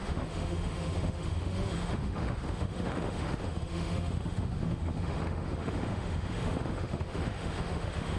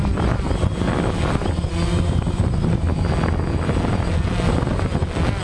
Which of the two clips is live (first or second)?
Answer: second